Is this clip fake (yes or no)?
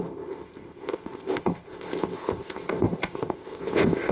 yes